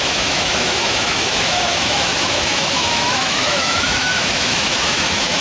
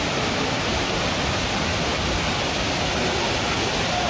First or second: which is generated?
first